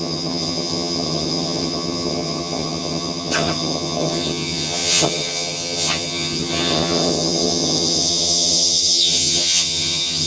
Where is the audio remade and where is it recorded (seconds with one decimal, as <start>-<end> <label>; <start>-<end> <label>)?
0.0-10.3 remade

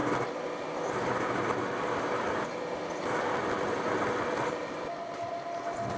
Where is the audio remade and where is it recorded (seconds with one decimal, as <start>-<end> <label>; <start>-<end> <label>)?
0.0-6.0 recorded

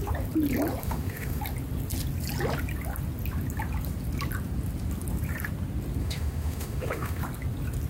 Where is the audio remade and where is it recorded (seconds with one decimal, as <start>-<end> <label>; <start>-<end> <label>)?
0.0-0.8 recorded; 0.8-1.4 remade; 1.4-6.0 recorded; 6.0-7.2 remade; 7.2-7.9 recorded

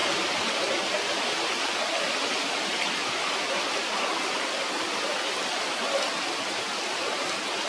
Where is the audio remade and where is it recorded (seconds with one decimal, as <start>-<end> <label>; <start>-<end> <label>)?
0.0-7.7 recorded

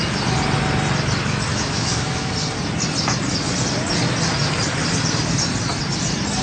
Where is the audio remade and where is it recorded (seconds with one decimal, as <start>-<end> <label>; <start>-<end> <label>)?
0.0-1.5 recorded; 1.5-2.3 remade; 2.3-6.4 recorded

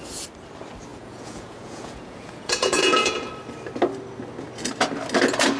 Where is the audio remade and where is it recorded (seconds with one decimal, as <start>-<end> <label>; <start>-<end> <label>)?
0.0-0.9 recorded; 0.9-3.3 remade; 3.3-5.6 recorded

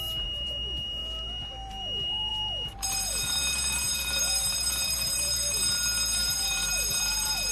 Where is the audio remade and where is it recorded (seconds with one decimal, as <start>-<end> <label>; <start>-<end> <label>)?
0.0-1.0 remade; 1.0-1.7 recorded; 1.7-5.6 remade; 5.6-6.2 recorded; 6.2-7.5 remade

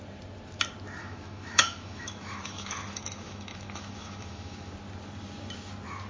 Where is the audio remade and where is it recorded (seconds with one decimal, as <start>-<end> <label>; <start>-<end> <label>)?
0.0-1.0 recorded; 1.0-4.7 remade; 4.7-6.1 recorded